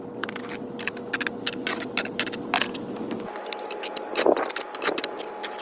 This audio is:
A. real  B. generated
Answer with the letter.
A